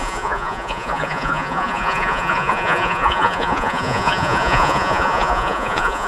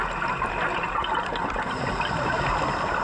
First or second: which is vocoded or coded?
first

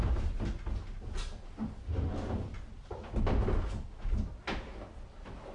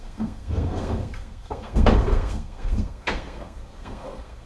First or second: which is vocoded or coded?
second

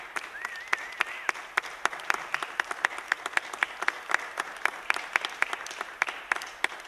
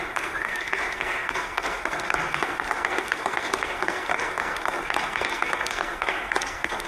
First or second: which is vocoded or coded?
second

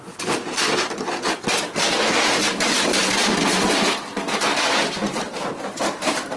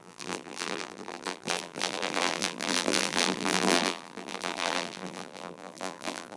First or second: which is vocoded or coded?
second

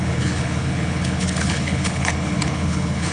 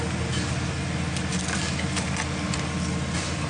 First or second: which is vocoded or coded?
first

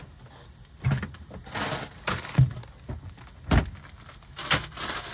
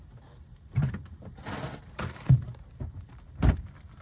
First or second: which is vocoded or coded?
second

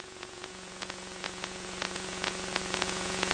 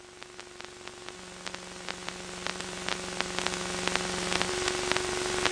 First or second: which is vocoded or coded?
first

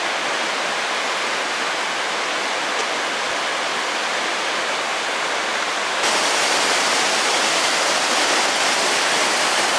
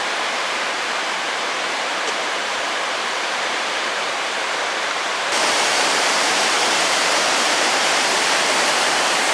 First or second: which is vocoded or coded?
second